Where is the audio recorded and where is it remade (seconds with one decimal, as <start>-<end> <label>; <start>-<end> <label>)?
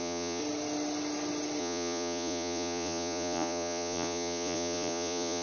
0.0-0.4 remade; 0.4-1.6 recorded; 1.6-5.4 remade